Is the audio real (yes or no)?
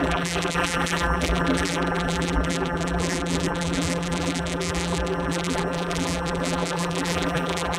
no